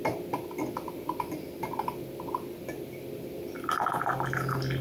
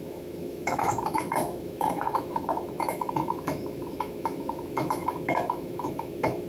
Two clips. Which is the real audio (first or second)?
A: first